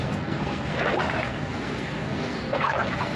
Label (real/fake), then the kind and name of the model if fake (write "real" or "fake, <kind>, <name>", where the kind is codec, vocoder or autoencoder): fake, codec, SNAC